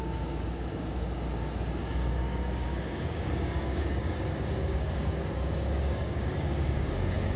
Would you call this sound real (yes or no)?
no